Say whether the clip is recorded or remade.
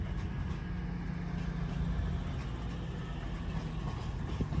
recorded